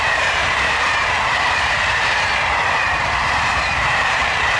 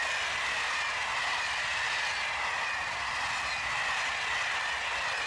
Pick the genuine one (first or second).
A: second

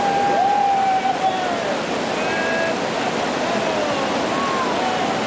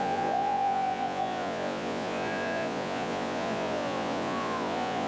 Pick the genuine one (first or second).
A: first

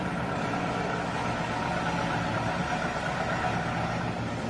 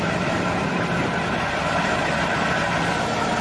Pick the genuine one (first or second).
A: first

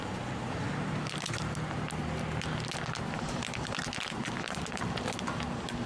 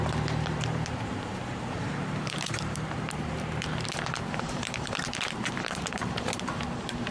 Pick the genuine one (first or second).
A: first